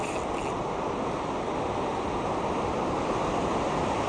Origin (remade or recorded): recorded